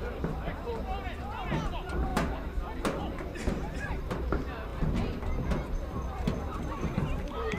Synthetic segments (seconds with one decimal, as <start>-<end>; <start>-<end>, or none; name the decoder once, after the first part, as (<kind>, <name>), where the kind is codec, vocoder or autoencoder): 0.0-2.1 (vocoder, BigVGAN v2); 3.9-4.7; 6.3-7.6